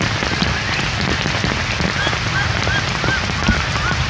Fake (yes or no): no